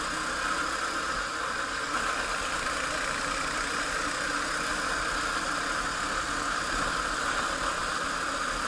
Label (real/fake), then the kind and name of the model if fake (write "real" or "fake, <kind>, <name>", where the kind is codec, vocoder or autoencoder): real